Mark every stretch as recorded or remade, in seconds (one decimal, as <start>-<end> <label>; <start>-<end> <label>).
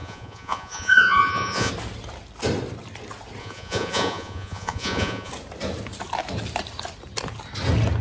0.0-1.7 remade; 1.7-3.4 recorded; 3.4-5.3 remade; 5.3-8.0 recorded